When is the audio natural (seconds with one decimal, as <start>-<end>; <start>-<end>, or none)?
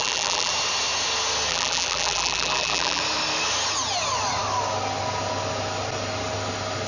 0.5-1.5; 3.0-6.9